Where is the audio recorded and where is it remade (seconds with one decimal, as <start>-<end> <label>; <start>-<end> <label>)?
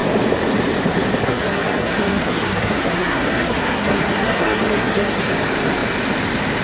0.0-1.2 recorded; 1.2-5.2 remade; 5.2-6.6 recorded